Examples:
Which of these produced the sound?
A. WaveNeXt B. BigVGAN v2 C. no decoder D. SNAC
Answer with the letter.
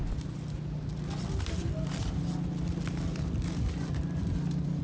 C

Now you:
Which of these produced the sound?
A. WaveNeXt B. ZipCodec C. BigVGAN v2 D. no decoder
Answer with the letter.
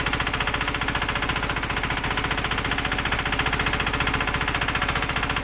D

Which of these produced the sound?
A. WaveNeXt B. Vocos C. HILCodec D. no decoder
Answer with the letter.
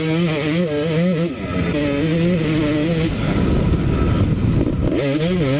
D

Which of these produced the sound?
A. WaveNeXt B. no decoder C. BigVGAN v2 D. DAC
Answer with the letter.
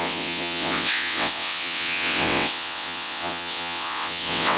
A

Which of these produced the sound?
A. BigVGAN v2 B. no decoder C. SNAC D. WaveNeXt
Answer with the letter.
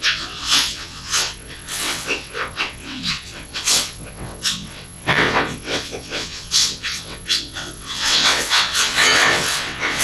D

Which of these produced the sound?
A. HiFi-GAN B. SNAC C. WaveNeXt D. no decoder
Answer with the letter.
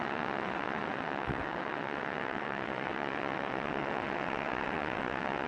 C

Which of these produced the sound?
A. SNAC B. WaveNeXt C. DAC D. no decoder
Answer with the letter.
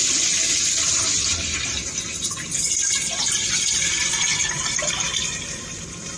D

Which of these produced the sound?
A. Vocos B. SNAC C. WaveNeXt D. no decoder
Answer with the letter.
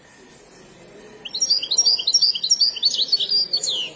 D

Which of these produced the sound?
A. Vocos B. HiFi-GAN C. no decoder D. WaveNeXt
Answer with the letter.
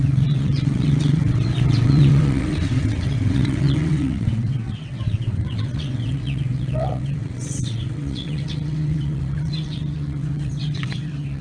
D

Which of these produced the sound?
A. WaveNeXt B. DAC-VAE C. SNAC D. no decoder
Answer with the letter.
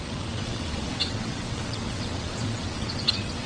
A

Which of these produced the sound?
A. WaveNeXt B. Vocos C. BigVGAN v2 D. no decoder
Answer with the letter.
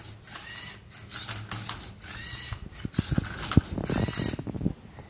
D